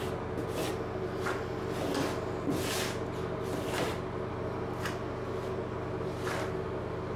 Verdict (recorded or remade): recorded